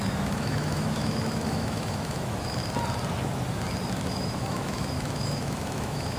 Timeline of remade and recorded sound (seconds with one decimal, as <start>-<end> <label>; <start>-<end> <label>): 0.0-2.6 remade; 2.6-3.9 recorded; 3.9-6.2 remade